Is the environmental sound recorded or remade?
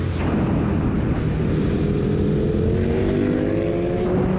recorded